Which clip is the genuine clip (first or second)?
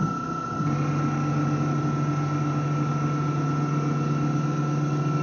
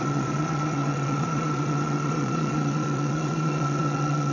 first